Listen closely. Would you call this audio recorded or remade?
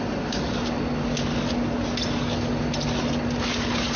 recorded